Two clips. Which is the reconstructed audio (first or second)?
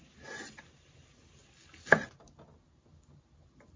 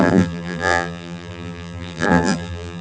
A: second